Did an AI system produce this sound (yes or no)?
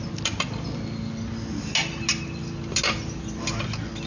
no